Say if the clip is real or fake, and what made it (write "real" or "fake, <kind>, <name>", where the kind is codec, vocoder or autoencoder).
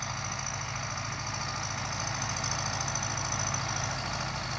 real